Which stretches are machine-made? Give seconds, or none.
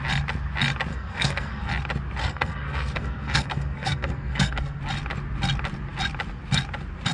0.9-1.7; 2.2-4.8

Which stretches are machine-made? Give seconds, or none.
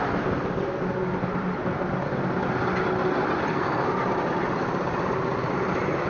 3.5-4.0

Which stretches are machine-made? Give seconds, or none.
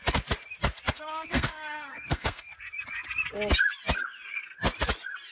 0.9-2.5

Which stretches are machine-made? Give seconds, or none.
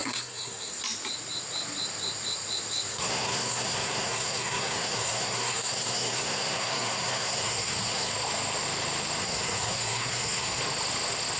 0.0-0.8; 2.9-8.1; 9.2-10.6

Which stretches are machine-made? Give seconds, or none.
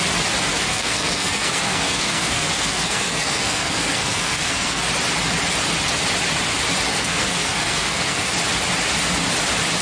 0.5-4.9; 6.9-8.3